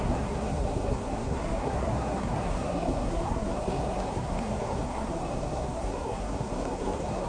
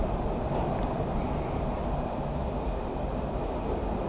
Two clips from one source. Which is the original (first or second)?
second